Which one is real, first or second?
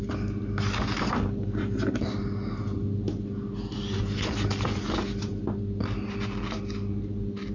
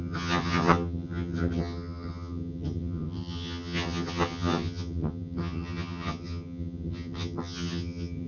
first